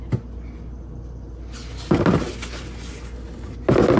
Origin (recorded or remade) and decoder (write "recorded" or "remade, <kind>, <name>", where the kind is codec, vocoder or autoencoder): recorded